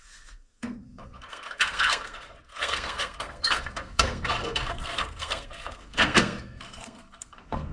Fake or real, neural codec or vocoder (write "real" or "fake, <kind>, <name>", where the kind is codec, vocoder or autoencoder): fake, codec, SNAC